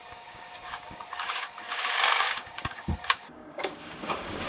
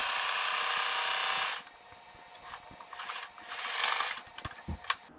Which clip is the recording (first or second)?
second